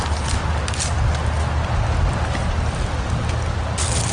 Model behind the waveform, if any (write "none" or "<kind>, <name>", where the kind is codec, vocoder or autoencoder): none